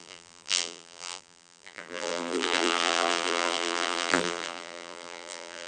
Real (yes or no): no